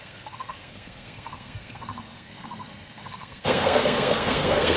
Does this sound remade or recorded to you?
remade